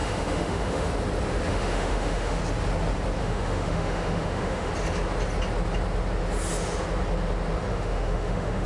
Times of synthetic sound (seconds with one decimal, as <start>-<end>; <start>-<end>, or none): 0.0-0.9; 1.5-2.4; 3.2-4.7; 7.7-8.7